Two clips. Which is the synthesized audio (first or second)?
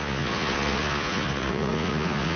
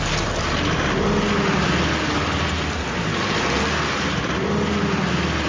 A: first